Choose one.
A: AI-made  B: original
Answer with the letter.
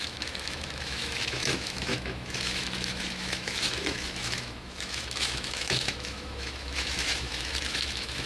A